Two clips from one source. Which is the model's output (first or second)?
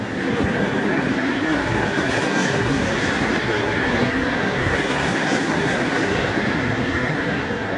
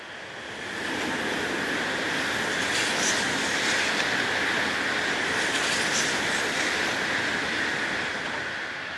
first